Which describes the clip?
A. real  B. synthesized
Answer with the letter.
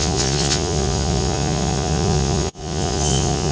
B